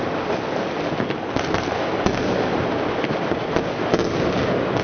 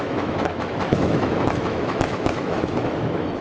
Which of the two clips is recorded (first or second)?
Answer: first